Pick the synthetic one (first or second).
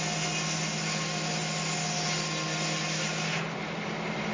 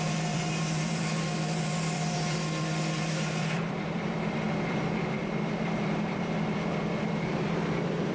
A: second